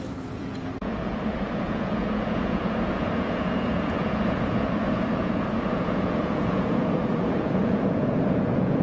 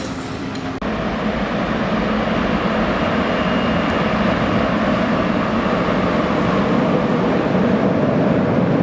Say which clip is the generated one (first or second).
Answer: first